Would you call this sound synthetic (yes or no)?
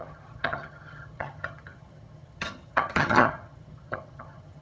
yes